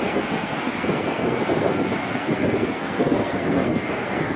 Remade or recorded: remade